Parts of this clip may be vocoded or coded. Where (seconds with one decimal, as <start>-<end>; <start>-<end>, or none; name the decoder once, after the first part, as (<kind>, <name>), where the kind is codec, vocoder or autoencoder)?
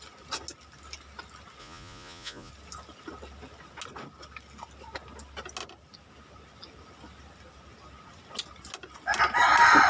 1.6-2.5 (vocoder, Vocos)